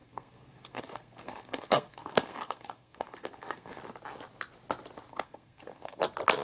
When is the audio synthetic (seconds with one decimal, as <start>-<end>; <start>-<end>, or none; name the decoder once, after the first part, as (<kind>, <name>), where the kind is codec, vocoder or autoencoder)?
0.0-3.8 (codec, SNAC); 5.1-6.0